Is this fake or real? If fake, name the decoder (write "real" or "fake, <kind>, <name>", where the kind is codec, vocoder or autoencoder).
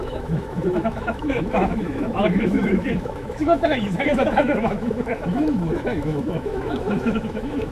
fake, autoencoder, DAC-VAE